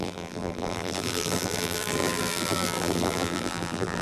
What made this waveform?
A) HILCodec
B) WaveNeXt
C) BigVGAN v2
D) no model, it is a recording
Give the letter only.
C